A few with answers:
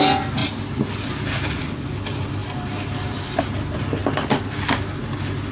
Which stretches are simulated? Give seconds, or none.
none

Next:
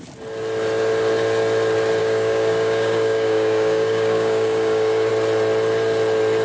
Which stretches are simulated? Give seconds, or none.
2.0-5.1 (codec, DAC)

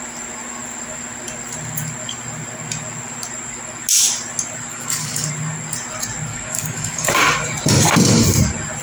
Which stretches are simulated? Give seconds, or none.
4.7-5.3 (codec, DAC); 6.3-7.1

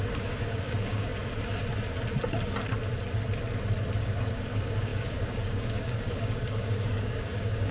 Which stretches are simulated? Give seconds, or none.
0.0-1.1 (codec, DAC); 4.0-7.7

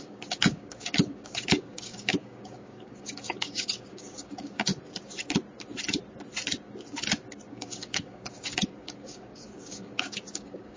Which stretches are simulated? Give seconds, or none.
0.0-4.7 (codec, DAC); 7.5-10.8

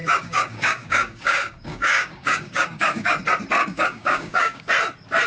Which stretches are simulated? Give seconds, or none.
0.0-3.2 (codec, DAC); 3.6-4.7